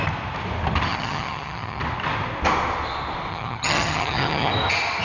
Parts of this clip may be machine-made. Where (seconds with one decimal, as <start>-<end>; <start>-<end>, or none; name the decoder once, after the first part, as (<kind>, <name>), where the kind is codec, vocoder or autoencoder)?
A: 0.9-1.8 (vocoder, HiFi-GAN); 3.3-4.5